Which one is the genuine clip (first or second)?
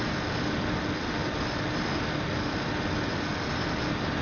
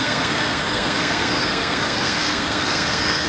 first